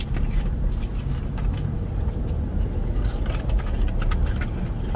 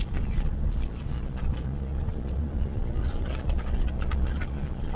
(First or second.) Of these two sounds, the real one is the first